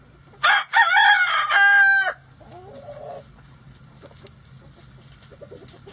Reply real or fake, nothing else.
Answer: real